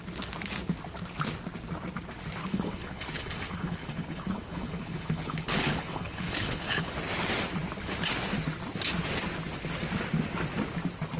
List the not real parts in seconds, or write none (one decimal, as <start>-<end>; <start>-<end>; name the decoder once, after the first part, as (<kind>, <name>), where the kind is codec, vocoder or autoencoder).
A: 2.4-6.9 (codec, HILCodec)